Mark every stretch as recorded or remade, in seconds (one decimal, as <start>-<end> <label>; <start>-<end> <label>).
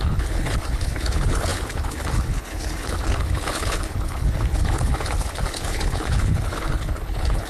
0.0-7.5 remade